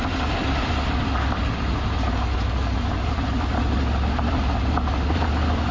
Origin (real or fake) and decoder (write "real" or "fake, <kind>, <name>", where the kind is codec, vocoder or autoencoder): fake, vocoder, BigVGAN v2